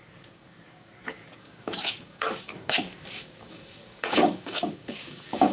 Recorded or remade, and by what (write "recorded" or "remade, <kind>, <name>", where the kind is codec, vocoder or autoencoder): remade, codec, DAC